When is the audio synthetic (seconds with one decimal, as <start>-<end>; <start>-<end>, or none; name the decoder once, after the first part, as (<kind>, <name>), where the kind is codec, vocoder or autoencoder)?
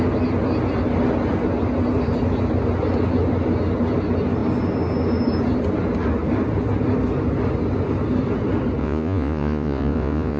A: 8.8-10.4 (vocoder, Vocos)